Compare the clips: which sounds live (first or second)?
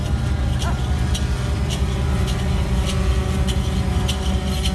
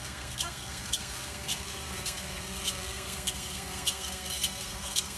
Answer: first